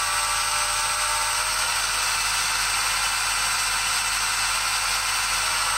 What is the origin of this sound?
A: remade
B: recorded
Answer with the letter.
B